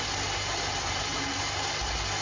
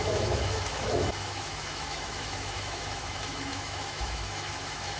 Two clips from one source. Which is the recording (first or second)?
first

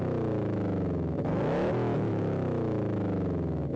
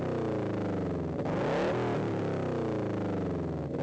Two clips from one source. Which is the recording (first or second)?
second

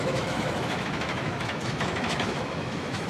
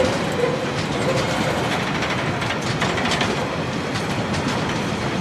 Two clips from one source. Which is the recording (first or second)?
second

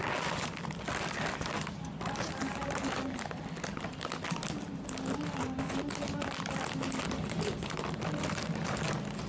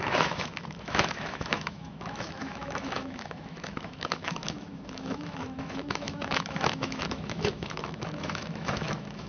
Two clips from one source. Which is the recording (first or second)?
first